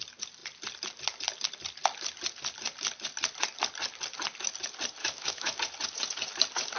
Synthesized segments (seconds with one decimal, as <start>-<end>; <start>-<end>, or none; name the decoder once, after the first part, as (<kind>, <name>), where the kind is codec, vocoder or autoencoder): 5.0-5.6 (autoencoder, DAC-VAE)